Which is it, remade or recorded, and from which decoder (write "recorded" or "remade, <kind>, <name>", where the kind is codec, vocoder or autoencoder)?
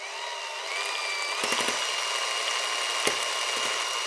recorded